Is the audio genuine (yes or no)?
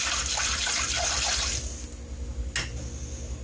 yes